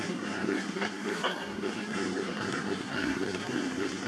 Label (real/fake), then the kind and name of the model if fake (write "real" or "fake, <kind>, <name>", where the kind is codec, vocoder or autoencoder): fake, codec, SNAC